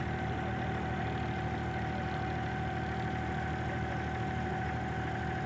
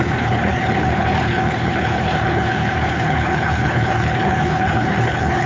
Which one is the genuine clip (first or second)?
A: first